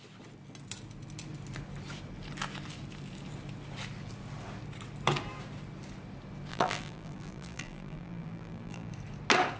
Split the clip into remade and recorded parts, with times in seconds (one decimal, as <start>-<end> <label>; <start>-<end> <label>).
0.0-6.5 recorded; 6.5-8.9 remade; 8.9-9.6 recorded

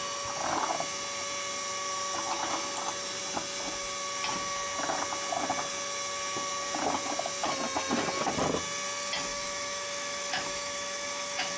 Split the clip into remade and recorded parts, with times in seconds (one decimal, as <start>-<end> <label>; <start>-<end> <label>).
0.0-9.3 recorded; 9.3-11.6 remade

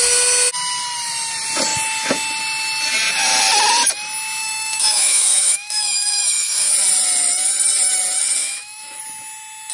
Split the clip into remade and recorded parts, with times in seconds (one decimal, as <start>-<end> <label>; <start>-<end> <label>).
0.0-4.4 recorded; 4.4-6.7 remade; 6.7-8.4 recorded; 8.4-9.0 remade; 9.0-9.7 recorded

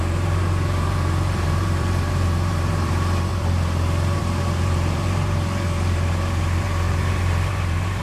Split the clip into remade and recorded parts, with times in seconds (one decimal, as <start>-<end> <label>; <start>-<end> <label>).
0.0-8.0 remade